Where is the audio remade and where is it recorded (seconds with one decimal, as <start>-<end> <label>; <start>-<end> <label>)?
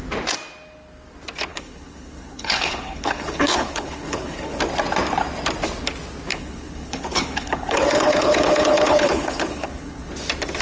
0.0-1.5 recorded; 1.5-4.6 remade; 4.6-6.3 recorded; 6.3-10.1 remade; 10.1-10.6 recorded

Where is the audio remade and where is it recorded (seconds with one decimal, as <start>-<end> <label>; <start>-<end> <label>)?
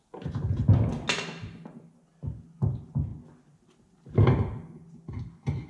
0.0-5.7 recorded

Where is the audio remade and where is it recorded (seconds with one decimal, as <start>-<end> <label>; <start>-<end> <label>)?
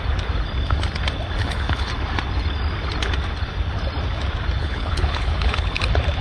0.0-1.4 recorded; 1.4-1.9 remade; 1.9-4.6 recorded; 4.6-5.8 remade; 5.8-6.2 recorded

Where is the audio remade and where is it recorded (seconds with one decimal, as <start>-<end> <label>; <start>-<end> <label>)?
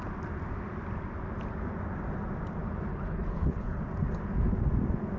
0.0-2.9 recorded; 2.9-3.8 remade; 3.8-5.2 recorded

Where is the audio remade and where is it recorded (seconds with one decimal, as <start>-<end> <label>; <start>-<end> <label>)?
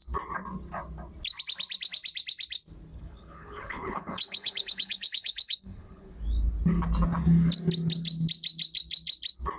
0.0-2.9 recorded; 2.9-6.1 remade; 6.1-9.6 recorded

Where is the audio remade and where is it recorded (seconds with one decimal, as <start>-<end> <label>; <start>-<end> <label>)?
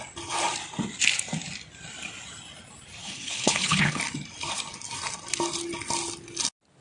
0.0-3.0 recorded; 3.0-4.0 remade; 4.0-6.8 recorded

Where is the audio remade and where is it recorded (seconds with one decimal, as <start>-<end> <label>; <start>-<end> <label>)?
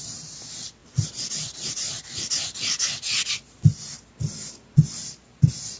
0.0-5.8 recorded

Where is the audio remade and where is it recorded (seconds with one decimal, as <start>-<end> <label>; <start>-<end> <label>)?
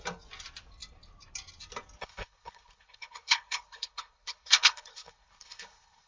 0.0-2.0 recorded; 2.0-6.1 remade